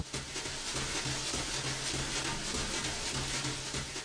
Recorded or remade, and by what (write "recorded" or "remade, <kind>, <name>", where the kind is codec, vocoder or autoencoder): recorded